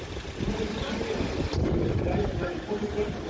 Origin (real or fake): real